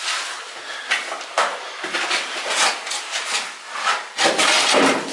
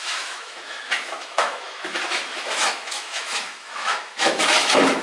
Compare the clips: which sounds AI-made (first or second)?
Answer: second